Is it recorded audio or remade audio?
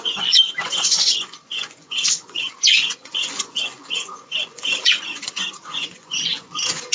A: remade